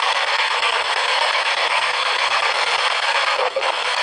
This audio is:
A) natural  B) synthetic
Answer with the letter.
B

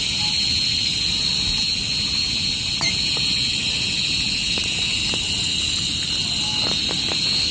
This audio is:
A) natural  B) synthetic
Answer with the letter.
A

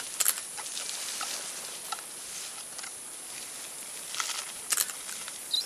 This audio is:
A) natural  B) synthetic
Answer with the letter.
A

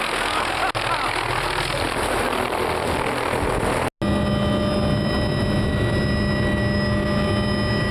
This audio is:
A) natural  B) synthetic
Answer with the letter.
A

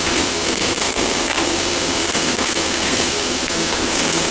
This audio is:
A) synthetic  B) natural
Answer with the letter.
A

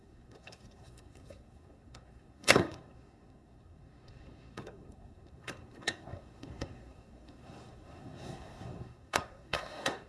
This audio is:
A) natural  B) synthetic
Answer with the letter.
B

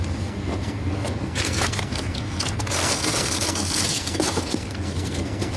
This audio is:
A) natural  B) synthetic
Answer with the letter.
B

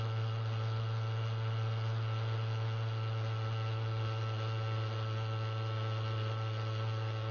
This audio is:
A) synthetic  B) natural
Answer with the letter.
B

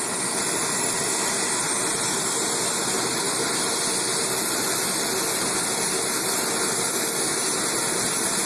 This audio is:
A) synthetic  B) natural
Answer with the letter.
B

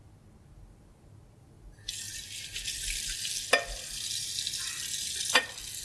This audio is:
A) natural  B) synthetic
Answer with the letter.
A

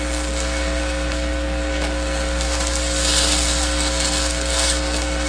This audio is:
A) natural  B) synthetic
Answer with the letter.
B